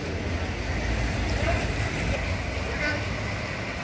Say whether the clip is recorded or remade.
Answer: recorded